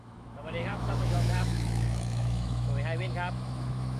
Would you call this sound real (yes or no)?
no